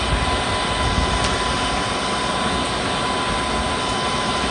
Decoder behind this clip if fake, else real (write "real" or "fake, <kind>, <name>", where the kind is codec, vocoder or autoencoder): real